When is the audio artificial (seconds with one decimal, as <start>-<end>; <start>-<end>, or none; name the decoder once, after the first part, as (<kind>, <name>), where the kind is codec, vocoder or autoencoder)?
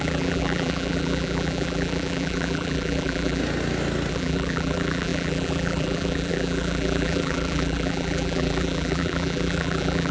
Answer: 0.0-3.4 (vocoder, BigVGAN v2); 4.1-10.1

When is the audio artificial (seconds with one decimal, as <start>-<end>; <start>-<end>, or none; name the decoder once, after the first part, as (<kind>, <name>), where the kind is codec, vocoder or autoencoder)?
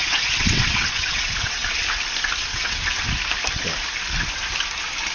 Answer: 0.0-1.8 (vocoder, WaveNeXt); 2.5-3.1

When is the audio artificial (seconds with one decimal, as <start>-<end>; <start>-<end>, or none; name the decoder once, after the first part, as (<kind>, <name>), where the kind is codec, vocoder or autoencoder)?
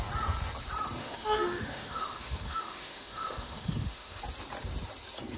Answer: 1.0-4.2 (autoencoder, DAC-VAE)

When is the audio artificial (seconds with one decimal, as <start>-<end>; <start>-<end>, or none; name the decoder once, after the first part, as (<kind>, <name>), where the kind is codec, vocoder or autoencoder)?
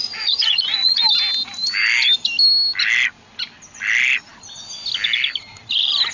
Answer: 0.0-1.0 (vocoder, Vocos)